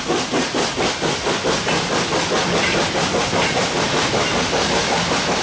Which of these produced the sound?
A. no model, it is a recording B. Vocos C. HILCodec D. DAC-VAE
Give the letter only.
A